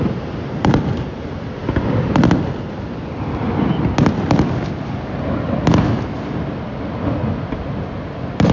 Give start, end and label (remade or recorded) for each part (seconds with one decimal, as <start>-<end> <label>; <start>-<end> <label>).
0.0-8.5 recorded